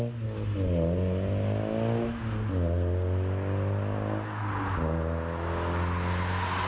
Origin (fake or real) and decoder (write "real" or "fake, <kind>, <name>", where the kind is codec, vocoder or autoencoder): real